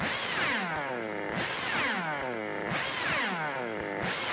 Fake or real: real